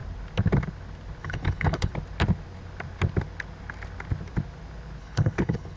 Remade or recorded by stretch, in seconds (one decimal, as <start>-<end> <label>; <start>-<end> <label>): 0.0-1.2 recorded; 1.2-1.9 remade; 1.9-5.0 recorded; 5.0-5.8 remade